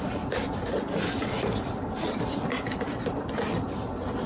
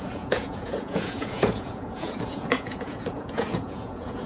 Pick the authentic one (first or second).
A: first